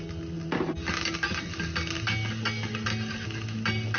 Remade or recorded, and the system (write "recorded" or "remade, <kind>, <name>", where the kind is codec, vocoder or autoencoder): recorded